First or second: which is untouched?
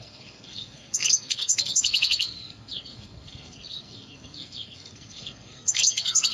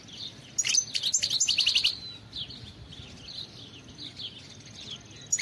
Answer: second